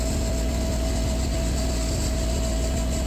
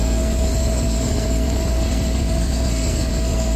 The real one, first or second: first